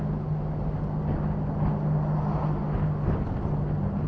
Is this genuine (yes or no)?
yes